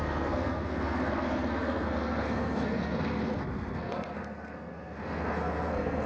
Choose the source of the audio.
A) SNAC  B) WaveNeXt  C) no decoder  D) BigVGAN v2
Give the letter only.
A